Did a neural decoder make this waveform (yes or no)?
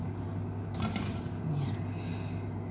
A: no